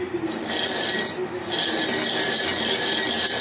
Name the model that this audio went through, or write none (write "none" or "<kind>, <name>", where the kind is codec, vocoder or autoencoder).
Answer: none